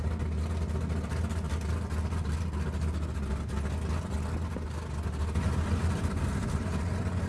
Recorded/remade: recorded